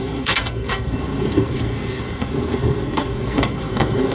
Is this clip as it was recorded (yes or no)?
no